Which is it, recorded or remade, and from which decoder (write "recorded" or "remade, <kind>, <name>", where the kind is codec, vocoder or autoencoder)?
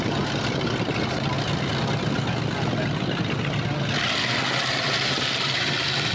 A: recorded